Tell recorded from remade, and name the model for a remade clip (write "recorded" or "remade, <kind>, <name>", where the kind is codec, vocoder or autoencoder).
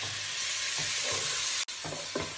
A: recorded